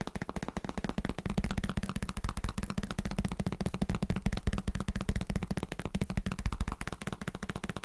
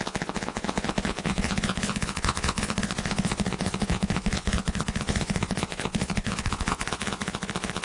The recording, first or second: first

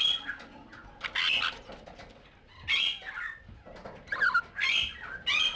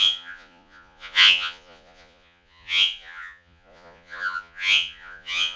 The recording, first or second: first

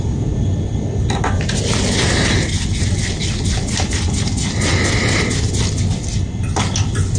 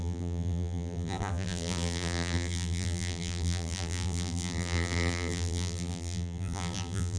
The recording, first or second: first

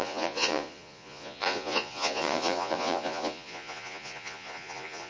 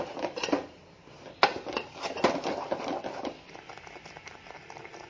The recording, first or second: second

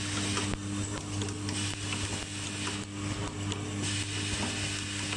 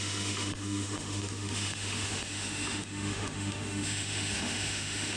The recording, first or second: first